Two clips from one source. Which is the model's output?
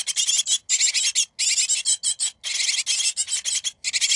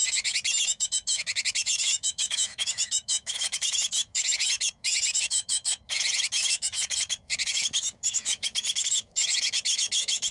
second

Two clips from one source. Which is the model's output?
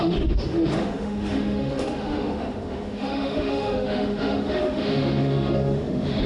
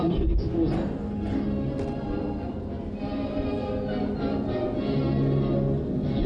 first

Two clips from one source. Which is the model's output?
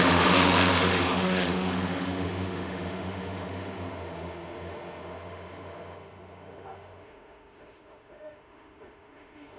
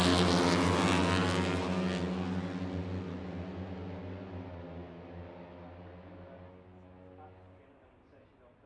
first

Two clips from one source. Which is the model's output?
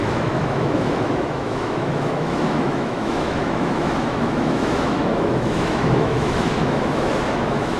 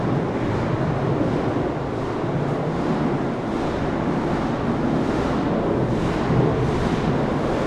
first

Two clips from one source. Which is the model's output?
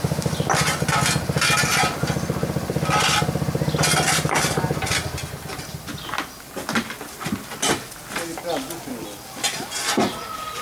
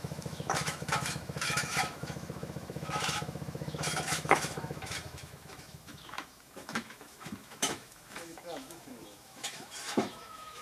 second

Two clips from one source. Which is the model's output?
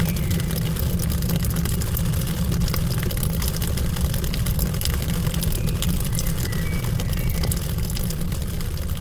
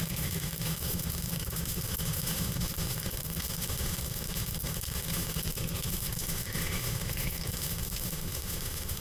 second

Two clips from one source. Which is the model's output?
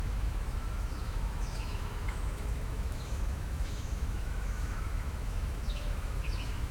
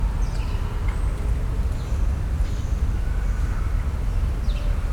first